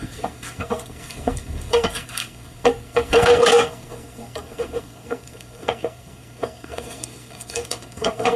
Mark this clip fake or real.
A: fake